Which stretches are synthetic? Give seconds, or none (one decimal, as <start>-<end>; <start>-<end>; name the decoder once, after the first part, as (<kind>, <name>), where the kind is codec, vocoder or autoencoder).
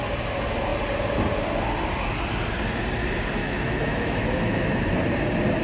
3.4-4.8 (autoencoder, DAC-VAE)